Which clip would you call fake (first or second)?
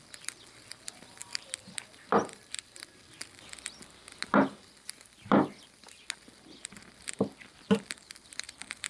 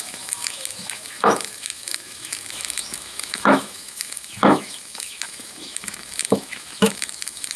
second